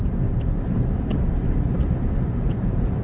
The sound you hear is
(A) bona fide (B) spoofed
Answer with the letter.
B